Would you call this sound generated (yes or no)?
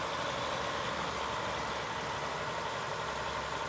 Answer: no